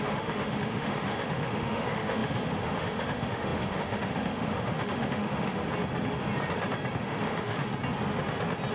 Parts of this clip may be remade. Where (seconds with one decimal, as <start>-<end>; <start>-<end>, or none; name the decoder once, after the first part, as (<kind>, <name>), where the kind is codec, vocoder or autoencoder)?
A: 0.0-5.6 (autoencoder, DAC-VAE); 7.0-7.7